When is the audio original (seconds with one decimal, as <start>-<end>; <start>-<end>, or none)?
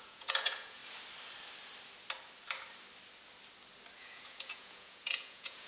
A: 0.8-4.0